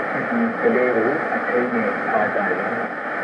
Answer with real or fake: real